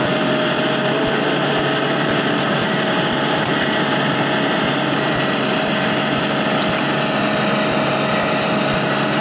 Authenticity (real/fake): real